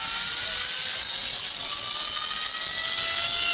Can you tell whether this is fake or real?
real